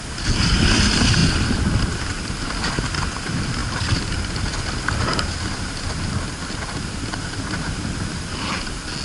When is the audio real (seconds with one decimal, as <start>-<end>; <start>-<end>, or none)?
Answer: 0.0-3.6; 4.5-9.0